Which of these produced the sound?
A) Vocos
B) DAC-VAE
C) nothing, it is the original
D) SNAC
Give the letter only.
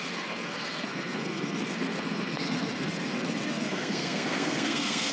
D